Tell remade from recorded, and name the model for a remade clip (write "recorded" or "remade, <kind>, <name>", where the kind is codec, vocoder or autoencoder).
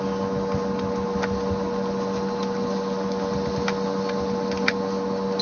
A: recorded